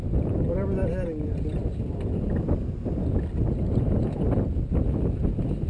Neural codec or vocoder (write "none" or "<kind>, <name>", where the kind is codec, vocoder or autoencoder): none